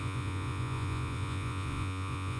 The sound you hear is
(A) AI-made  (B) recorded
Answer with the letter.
A